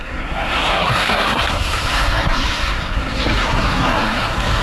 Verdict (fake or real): fake